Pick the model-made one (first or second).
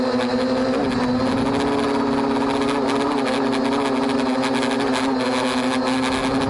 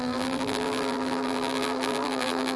second